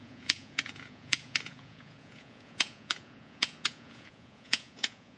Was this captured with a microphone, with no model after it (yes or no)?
no